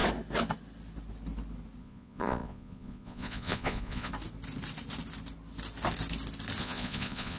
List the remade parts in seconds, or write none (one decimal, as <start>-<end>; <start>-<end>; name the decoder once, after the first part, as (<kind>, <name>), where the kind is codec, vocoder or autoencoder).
1.8-4.1 (vocoder, Vocos); 6.6-7.4